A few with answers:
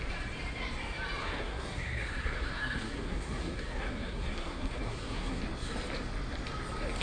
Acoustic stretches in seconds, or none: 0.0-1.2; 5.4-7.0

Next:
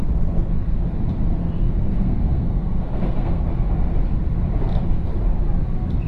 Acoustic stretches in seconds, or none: 0.0-1.4; 3.4-6.1

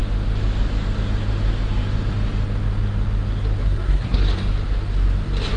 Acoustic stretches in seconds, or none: 0.0-3.6; 4.2-5.6

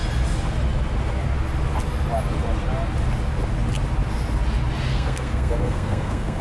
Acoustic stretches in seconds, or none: 0.0-4.9

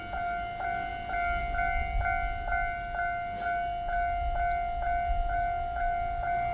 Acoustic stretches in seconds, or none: 0.0-6.5

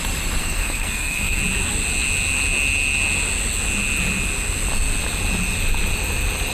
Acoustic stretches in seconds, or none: 0.0-0.4; 1.4-6.5

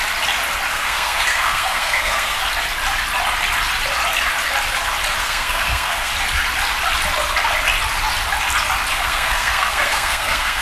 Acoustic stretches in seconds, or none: 0.0-0.7; 2.4-5.2; 6.1-8.9